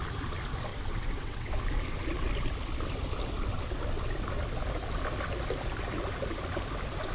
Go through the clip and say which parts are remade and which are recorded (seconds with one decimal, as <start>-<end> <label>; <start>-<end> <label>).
0.0-0.7 recorded; 0.7-1.5 remade; 1.5-7.1 recorded